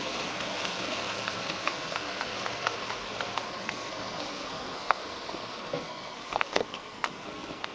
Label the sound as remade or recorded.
remade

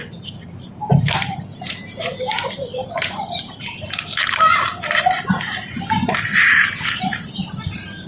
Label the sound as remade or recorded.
remade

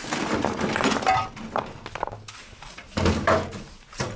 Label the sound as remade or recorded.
recorded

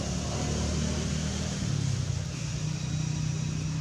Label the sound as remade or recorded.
recorded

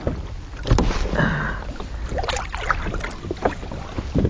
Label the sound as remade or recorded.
recorded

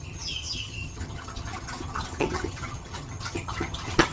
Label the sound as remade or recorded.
remade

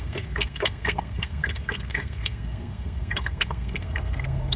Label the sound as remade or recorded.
remade